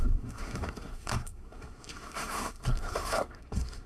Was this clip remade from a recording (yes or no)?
yes